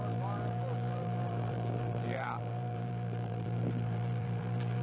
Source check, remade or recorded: remade